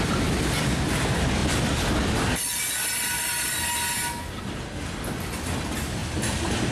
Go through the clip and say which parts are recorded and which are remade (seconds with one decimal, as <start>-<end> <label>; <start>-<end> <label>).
0.0-6.7 recorded